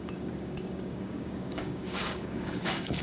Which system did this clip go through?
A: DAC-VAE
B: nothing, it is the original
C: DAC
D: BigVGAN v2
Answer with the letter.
C